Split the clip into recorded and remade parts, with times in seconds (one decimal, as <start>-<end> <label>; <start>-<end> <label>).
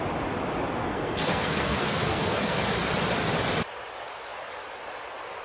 0.0-0.8 recorded; 0.8-2.6 remade; 2.6-5.4 recorded